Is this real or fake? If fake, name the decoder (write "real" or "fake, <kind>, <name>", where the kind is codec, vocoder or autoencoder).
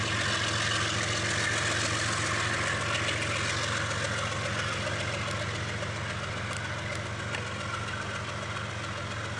real